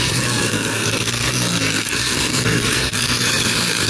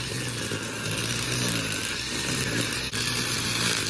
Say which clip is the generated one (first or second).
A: first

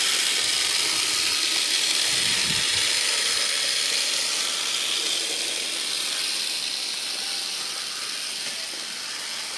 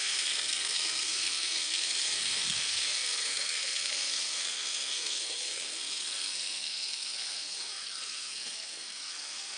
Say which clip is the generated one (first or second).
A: second